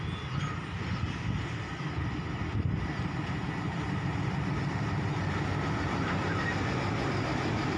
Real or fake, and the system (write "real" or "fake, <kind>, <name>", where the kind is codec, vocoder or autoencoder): real